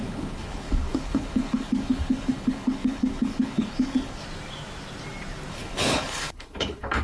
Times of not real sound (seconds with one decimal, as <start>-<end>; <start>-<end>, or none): 0.0-4.2; 5.5-7.0